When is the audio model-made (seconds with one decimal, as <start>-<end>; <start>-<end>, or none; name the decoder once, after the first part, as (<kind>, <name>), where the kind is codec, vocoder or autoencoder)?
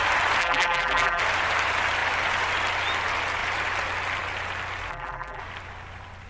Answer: 0.4-1.2 (vocoder, BigVGAN v2); 4.9-5.4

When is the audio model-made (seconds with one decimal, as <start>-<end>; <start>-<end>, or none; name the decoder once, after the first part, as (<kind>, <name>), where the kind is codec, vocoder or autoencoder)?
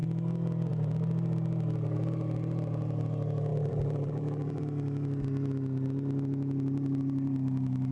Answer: 3.5-4.6 (vocoder, BigVGAN v2)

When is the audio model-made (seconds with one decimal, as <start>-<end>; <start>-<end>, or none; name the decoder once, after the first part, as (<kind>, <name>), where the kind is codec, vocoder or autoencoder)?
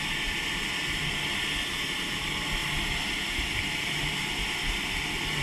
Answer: none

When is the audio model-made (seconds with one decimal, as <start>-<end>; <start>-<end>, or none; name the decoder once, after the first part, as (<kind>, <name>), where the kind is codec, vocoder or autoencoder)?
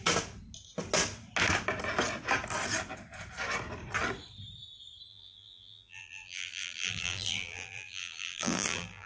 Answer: 5.1-9.1 (vocoder, BigVGAN v2)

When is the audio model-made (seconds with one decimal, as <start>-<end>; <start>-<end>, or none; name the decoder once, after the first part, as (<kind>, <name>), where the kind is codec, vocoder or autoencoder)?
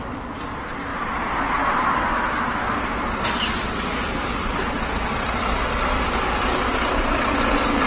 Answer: 0.9-1.5 (vocoder, BigVGAN v2)